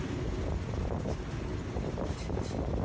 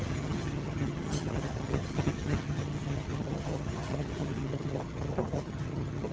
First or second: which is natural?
first